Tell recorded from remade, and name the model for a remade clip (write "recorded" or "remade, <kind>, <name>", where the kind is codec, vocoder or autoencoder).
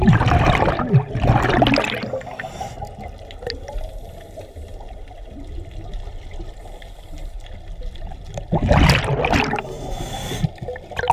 recorded